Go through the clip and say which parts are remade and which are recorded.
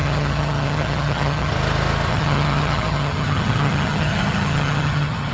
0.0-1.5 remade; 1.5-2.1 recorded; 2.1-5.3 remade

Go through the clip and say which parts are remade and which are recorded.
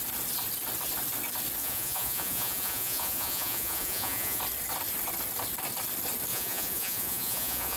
0.0-1.6 recorded; 1.6-4.4 remade; 4.4-6.3 recorded; 6.3-7.8 remade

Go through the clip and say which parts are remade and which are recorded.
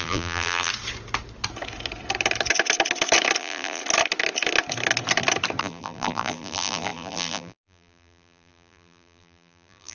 0.0-0.7 remade; 0.7-3.4 recorded; 3.4-3.8 remade; 3.8-5.6 recorded; 5.6-9.9 remade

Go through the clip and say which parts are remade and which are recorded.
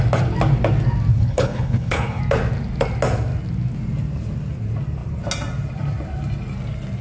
0.0-1.1 recorded; 1.1-2.2 remade; 2.2-7.0 recorded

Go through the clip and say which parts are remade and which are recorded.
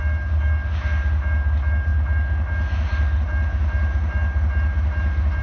0.0-5.4 recorded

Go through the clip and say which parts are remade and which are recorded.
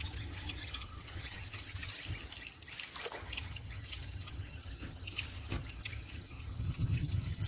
0.0-1.9 remade; 1.9-3.2 recorded; 3.2-7.5 remade